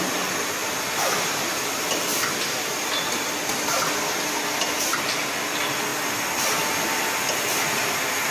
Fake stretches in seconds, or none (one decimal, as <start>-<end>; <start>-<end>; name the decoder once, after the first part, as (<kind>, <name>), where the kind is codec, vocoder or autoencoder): 0.6-1.5 (vocoder, BigVGAN v2)